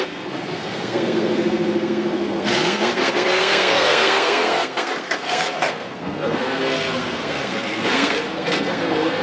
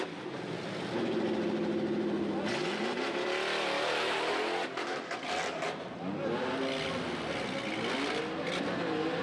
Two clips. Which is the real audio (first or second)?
second